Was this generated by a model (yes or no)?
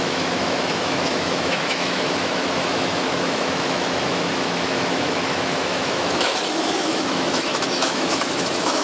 yes